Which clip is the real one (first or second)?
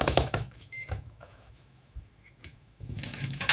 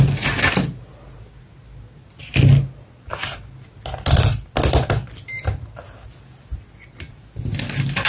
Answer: second